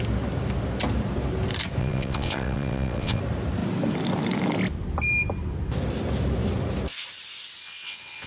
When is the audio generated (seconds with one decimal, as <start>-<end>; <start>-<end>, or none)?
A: 1.8-3.2; 7.6-8.3